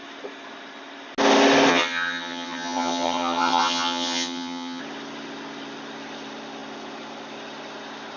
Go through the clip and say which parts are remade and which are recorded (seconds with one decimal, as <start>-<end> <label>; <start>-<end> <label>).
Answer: 0.0-1.7 recorded; 1.7-4.8 remade; 4.8-8.2 recorded

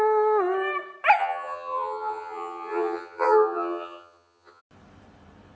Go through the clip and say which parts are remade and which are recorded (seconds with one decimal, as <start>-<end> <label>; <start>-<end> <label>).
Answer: 0.0-1.2 recorded; 1.2-4.6 remade; 4.6-5.6 recorded

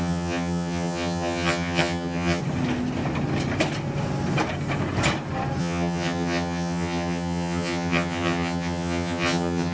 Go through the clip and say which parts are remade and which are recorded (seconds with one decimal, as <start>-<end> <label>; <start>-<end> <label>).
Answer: 0.0-2.4 remade; 2.4-5.6 recorded; 5.6-9.7 remade

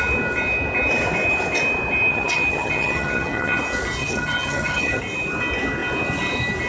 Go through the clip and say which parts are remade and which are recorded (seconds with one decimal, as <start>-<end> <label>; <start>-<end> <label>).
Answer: 0.0-2.1 recorded; 2.1-3.6 remade; 3.6-4.0 recorded; 4.0-5.0 remade; 5.0-6.7 recorded

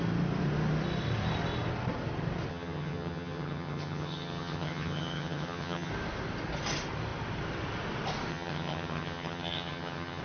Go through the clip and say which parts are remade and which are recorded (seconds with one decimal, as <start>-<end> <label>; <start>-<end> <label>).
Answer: 0.0-2.5 recorded; 2.5-5.9 remade; 5.9-8.3 recorded; 8.3-10.2 remade